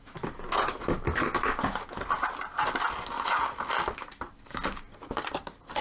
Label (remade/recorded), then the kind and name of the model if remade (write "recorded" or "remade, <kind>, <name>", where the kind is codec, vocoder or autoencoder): recorded